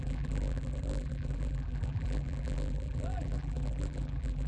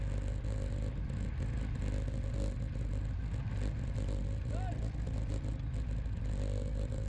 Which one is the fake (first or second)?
first